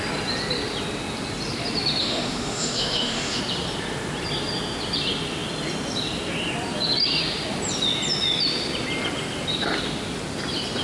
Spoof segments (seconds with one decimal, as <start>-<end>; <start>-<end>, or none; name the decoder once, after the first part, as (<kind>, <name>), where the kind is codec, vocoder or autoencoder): 2.0-3.4 (autoencoder, DAC-VAE)